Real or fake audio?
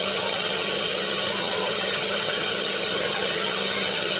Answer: fake